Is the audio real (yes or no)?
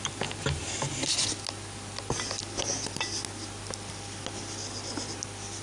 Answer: yes